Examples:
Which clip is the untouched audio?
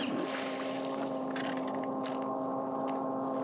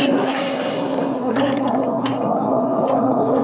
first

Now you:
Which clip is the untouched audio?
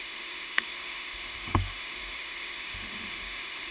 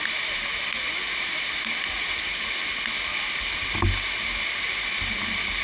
second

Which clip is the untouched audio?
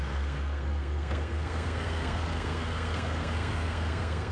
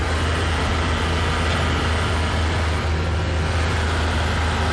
second